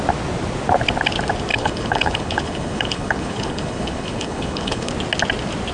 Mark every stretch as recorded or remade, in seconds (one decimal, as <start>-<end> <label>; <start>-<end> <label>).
0.0-1.5 recorded; 1.5-4.9 remade; 4.9-5.7 recorded